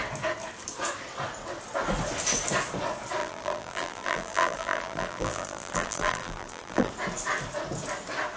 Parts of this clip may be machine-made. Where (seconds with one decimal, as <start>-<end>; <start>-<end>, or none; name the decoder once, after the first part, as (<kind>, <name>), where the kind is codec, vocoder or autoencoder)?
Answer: 3.2-6.9 (vocoder, BigVGAN v2)